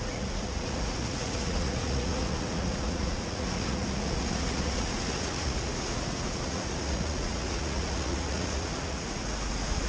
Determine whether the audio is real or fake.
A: fake